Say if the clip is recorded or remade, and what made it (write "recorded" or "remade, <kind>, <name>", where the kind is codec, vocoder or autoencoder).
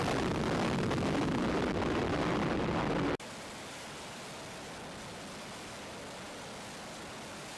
recorded